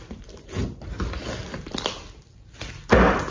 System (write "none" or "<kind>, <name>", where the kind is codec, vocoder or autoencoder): none